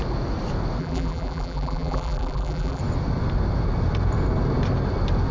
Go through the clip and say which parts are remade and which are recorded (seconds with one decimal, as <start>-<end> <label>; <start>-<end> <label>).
0.0-0.8 recorded; 0.8-2.8 remade; 2.8-5.3 recorded